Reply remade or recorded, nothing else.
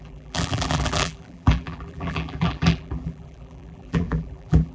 remade